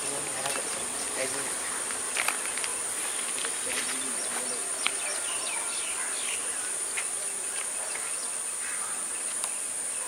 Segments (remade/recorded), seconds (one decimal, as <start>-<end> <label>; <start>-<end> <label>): 0.0-1.0 remade; 1.0-2.7 recorded; 2.7-3.4 remade; 3.4-10.1 recorded